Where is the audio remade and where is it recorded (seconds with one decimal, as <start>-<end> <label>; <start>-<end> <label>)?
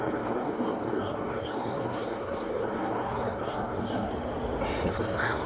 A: 0.0-4.1 remade; 4.1-4.9 recorded; 4.9-5.5 remade